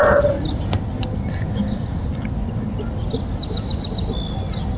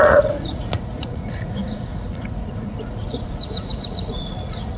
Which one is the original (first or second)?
first